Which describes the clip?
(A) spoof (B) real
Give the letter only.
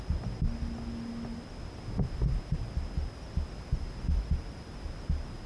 B